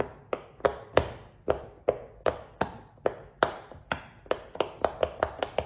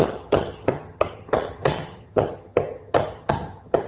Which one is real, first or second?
first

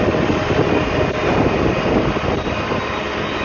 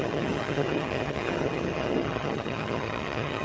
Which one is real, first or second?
first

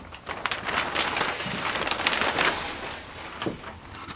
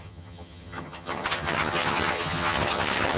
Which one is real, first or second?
first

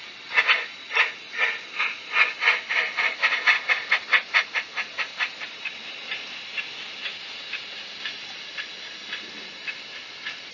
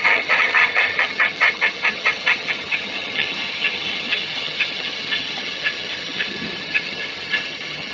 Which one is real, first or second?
first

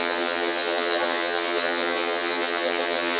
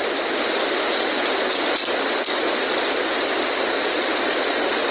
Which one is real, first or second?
second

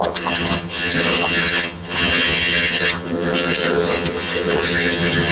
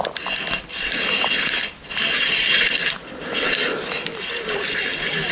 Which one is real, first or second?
second